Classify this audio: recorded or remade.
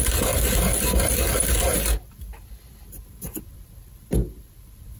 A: recorded